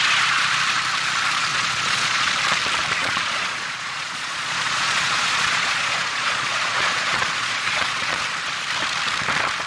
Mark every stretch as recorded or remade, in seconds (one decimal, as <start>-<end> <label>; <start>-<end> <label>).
0.0-1.5 recorded; 1.5-2.3 remade; 2.3-3.0 recorded; 3.0-8.2 remade; 8.2-9.7 recorded